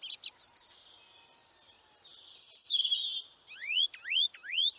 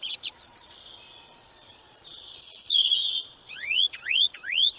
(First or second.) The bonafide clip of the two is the first